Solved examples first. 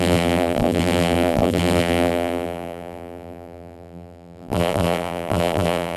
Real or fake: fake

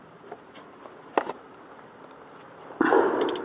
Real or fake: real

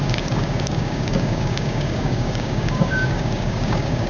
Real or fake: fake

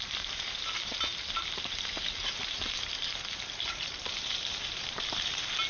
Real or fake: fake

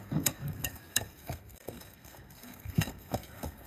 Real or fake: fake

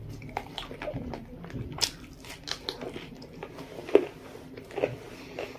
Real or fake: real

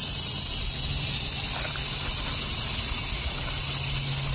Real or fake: real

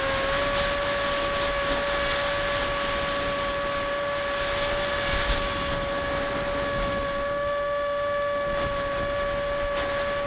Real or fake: real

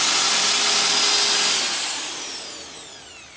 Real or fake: real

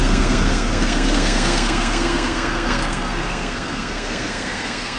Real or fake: fake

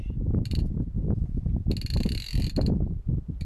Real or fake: real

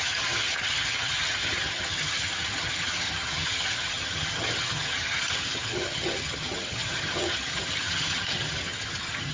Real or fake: fake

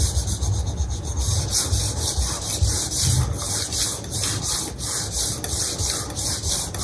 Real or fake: real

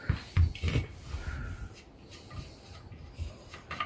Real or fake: real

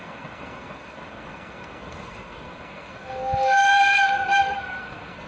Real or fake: fake